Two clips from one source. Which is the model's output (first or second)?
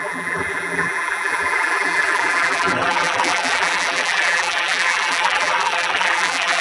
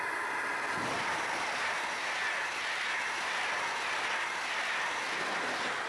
first